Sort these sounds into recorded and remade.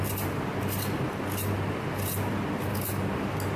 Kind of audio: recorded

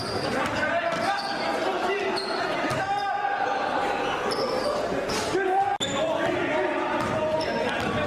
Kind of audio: remade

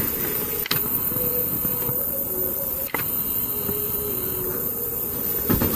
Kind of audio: remade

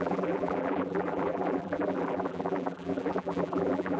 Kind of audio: remade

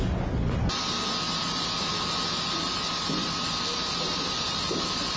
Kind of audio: remade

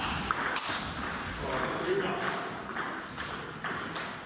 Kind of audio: recorded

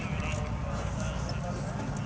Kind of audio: recorded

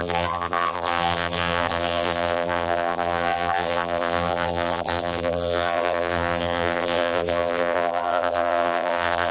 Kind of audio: remade